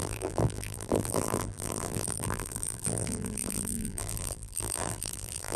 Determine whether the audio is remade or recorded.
remade